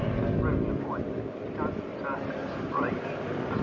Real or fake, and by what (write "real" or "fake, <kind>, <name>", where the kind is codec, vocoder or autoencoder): real